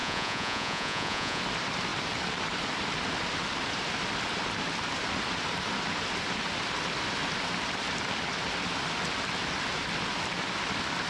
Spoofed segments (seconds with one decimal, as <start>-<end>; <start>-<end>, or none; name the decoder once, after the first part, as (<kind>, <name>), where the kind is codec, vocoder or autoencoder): 0.0-1.4 (vocoder, Vocos)